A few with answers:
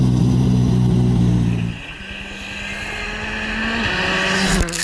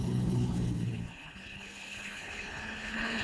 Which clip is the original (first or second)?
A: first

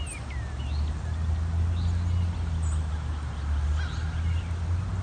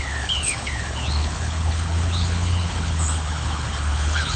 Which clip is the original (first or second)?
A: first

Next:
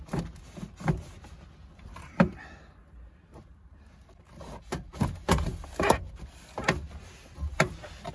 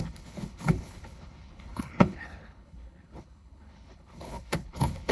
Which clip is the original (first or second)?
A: first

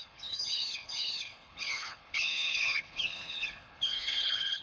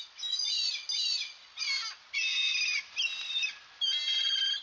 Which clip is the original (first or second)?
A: second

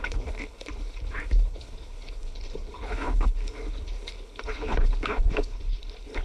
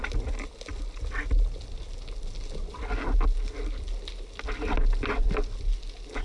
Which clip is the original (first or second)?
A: second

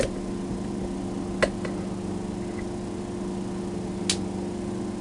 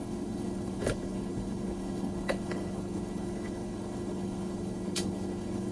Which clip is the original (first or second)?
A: first